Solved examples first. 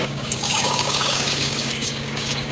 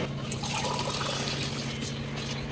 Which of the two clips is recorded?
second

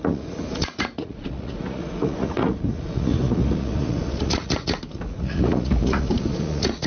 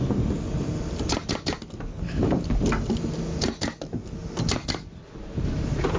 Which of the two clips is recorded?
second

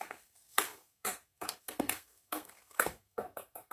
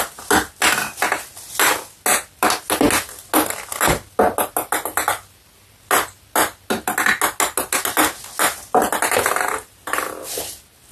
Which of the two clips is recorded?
second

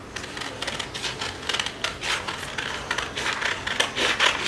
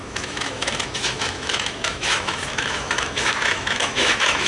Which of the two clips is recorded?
first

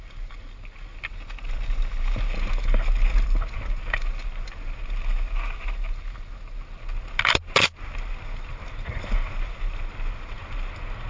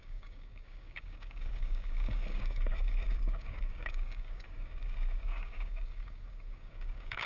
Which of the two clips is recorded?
first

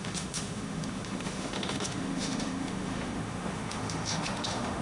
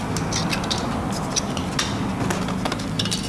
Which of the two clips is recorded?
second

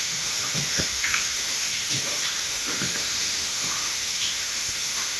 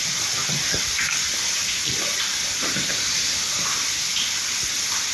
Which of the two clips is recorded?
second